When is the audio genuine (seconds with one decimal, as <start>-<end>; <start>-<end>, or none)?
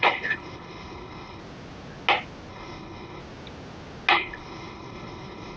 1.4-2.5; 3.2-4.1